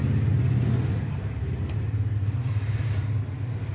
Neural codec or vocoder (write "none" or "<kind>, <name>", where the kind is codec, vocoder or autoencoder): none